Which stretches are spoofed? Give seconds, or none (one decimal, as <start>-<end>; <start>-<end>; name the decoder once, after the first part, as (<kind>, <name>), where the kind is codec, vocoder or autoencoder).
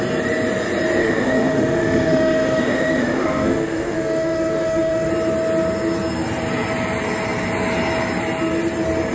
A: 1.0-5.1 (autoencoder, DAC-VAE)